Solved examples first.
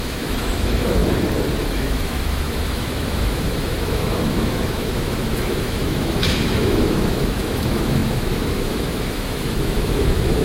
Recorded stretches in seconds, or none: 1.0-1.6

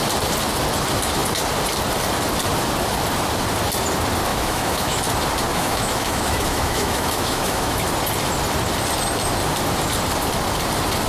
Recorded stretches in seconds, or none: 0.0-4.3; 5.0-5.5; 7.8-11.1

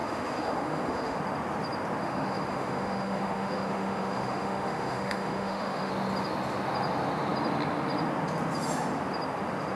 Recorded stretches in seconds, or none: 1.2-2.0; 5.9-9.8